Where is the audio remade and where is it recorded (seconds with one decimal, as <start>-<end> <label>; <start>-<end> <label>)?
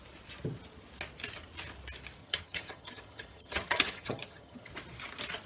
0.0-2.2 recorded; 2.2-4.7 remade; 4.7-5.5 recorded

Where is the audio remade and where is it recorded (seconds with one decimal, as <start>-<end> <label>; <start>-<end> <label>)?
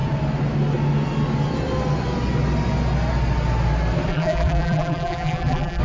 0.0-4.1 recorded; 4.1-5.8 remade